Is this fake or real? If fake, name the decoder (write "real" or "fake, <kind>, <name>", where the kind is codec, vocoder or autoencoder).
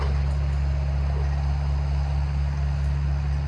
real